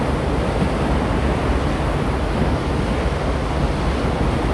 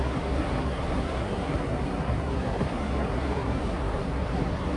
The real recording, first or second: first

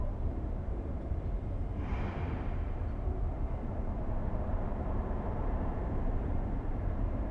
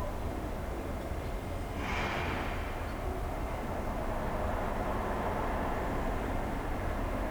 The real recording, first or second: second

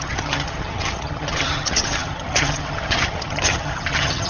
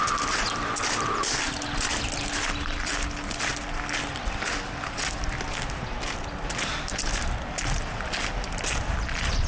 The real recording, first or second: second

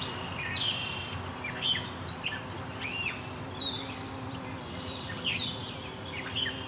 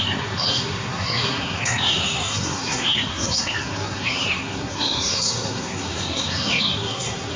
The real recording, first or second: first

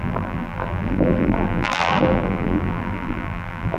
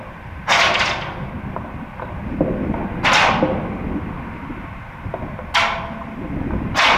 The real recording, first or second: second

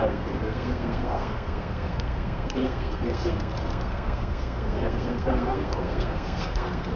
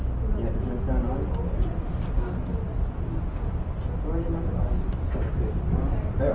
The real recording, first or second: second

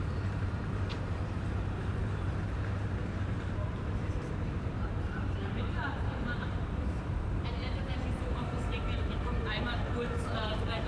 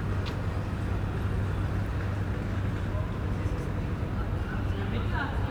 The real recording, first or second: second